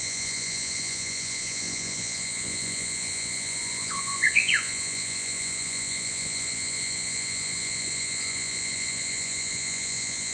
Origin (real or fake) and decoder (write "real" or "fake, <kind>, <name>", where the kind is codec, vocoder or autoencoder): fake, vocoder, Vocos